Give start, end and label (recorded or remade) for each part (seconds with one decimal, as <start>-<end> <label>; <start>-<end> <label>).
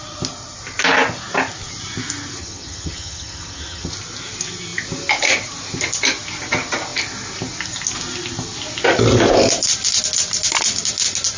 0.0-2.4 recorded; 2.4-3.9 remade; 3.9-11.4 recorded